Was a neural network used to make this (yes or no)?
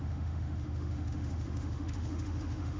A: yes